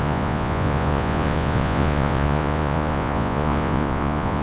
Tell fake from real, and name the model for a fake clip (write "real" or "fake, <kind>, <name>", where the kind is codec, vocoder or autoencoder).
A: fake, vocoder, Vocos